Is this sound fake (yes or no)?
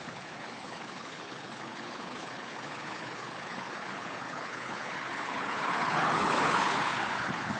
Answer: yes